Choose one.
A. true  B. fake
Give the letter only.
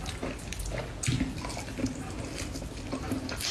A